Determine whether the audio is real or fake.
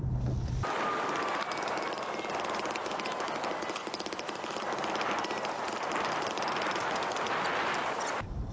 real